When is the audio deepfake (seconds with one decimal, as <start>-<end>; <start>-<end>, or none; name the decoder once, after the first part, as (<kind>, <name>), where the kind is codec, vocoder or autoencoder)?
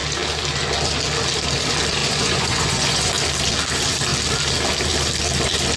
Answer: 2.0-3.1 (vocoder, Vocos)